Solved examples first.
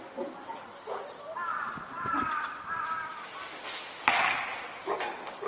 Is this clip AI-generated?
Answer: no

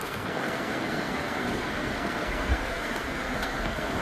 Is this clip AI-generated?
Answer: yes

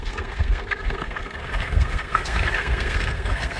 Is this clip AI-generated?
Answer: yes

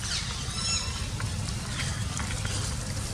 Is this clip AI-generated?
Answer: no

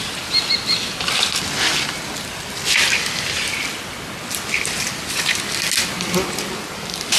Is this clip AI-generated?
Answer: no